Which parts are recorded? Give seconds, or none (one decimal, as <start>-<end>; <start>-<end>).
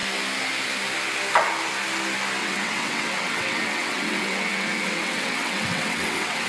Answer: 0.0-2.4